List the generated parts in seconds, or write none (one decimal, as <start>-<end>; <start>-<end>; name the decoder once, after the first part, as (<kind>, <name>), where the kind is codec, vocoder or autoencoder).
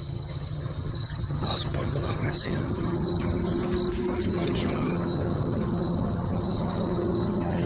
0.0-3.6 (vocoder, HiFi-GAN); 4.2-7.7